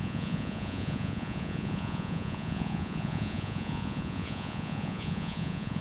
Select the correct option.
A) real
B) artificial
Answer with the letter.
B